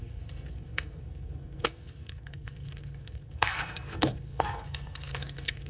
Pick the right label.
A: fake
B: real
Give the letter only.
A